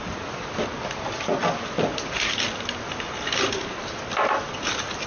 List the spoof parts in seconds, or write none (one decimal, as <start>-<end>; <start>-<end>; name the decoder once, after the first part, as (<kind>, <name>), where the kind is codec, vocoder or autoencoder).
none